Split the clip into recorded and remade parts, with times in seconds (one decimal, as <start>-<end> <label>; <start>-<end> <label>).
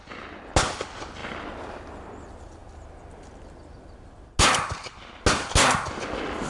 0.0-6.5 recorded